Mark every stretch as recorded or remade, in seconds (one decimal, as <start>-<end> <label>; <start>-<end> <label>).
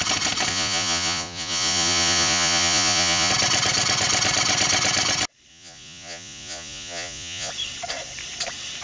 0.0-0.5 recorded; 0.5-3.3 remade; 3.3-5.5 recorded; 5.5-7.5 remade; 7.5-8.8 recorded